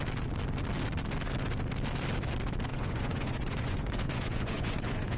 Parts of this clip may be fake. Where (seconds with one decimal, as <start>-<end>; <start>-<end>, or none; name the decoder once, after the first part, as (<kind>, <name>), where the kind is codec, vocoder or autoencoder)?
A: 2.7-5.2 (vocoder, Vocos)